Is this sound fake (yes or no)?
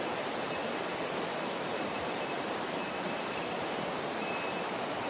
yes